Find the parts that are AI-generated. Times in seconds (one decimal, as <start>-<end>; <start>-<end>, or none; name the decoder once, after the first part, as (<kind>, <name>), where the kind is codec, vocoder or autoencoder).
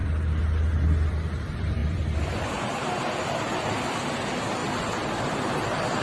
1.1-4.6 (vocoder, BigVGAN v2); 5.3-6.0